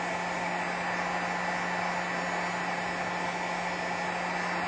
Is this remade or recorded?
recorded